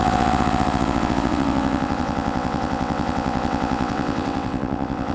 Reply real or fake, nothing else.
fake